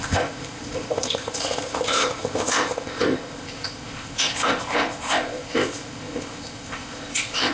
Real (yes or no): no